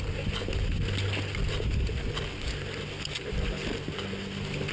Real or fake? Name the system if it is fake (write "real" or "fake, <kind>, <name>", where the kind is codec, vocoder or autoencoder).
real